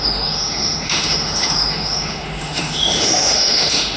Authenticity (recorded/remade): remade